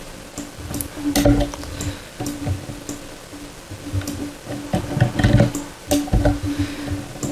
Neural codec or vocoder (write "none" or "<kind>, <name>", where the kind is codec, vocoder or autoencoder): none